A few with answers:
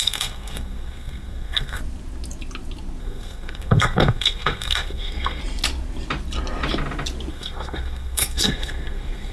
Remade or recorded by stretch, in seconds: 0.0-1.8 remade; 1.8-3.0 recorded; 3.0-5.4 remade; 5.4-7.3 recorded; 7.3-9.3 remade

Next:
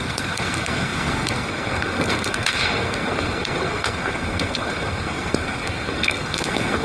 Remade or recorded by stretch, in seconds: 0.0-6.8 remade

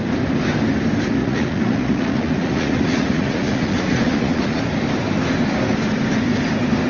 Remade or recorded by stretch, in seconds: 0.0-1.2 recorded; 1.2-4.6 remade; 4.6-6.9 recorded

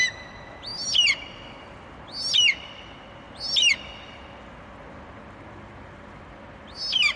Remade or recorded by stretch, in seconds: 0.0-7.2 recorded

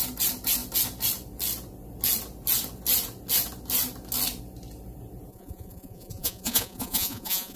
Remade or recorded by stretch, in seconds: 0.0-5.3 recorded; 5.3-7.6 remade

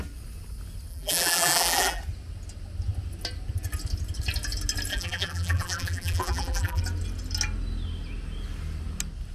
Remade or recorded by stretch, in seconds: 0.0-0.9 recorded; 0.9-2.0 remade; 2.0-4.9 recorded; 4.9-6.8 remade; 6.8-9.3 recorded